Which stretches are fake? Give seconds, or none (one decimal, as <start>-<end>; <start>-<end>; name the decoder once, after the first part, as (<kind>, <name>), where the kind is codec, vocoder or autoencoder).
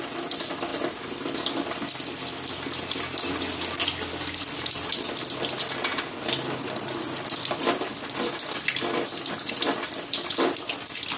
none